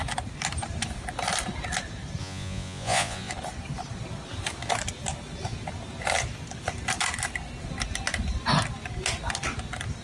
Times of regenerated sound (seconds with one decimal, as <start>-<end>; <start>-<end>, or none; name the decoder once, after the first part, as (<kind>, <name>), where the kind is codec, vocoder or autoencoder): 2.2-3.3 (vocoder, Vocos)